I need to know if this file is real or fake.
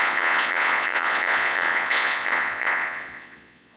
fake